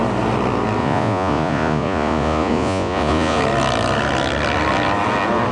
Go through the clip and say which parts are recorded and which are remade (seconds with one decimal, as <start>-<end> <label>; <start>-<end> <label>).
0.0-0.8 recorded; 0.8-3.4 remade; 3.4-5.5 recorded